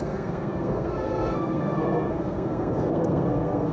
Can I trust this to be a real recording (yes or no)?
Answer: no